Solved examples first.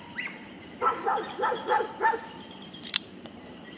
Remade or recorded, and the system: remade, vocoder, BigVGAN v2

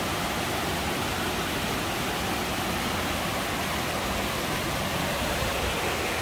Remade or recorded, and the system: recorded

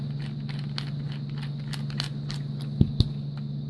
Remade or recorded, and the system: recorded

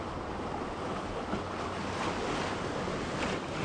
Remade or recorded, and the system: recorded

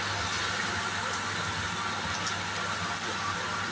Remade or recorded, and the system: recorded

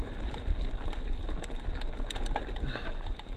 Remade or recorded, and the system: recorded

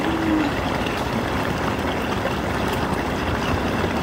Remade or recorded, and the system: recorded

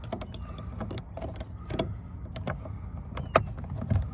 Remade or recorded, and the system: recorded